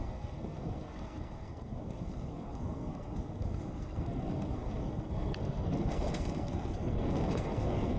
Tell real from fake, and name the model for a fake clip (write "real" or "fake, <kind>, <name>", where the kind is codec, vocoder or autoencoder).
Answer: fake, codec, SNAC